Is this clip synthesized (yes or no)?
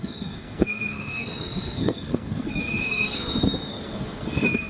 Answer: yes